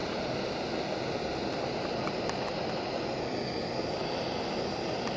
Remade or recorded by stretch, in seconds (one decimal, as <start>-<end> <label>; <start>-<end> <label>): 0.0-5.2 recorded